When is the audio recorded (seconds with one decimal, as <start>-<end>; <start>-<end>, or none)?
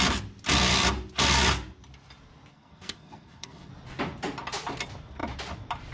0.0-2.5; 3.7-5.9